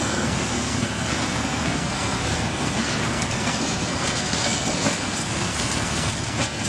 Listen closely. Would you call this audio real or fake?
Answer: fake